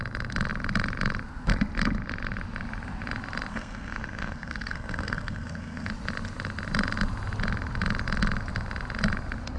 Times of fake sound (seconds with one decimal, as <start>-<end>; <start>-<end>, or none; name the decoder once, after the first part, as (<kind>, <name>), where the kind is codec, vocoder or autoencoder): 3.5-5.9 (codec, SNAC)